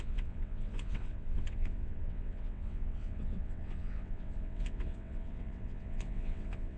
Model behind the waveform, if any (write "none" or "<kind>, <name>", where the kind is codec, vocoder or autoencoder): vocoder, WaveNeXt